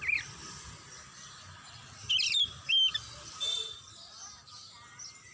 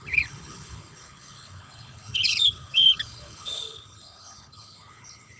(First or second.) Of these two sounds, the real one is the first